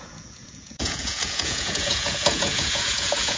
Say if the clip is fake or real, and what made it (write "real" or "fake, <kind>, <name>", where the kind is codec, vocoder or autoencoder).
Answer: fake, vocoder, Vocos